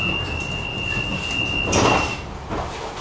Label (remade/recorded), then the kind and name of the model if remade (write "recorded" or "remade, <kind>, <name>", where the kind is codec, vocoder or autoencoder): recorded